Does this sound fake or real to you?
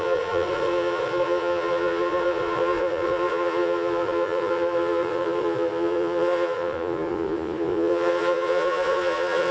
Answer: fake